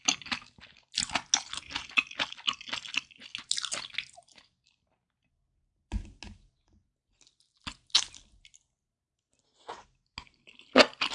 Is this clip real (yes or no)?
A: yes